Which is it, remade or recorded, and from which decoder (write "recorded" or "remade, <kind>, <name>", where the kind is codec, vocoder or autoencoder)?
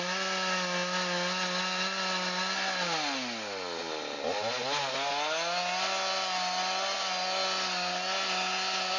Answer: recorded